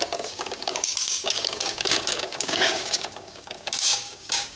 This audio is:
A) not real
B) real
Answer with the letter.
A